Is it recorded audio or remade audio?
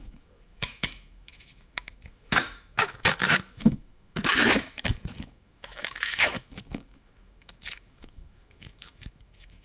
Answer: remade